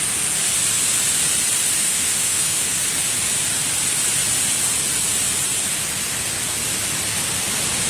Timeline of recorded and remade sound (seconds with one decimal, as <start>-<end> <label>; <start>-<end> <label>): 0.0-1.8 recorded; 1.8-2.7 remade; 2.7-7.9 recorded